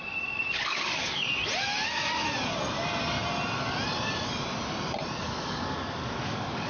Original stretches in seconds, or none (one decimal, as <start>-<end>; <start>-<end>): 1.4-5.2